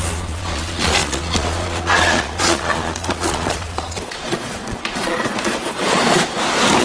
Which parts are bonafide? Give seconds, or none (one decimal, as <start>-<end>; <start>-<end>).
6.0-6.8